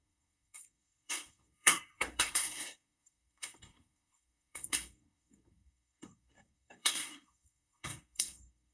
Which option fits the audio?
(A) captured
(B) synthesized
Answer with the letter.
B